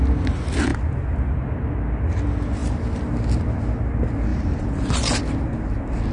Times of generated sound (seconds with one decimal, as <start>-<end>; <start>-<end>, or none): 2.6-3.2; 4.3-5.2